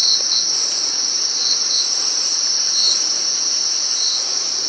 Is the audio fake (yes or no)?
yes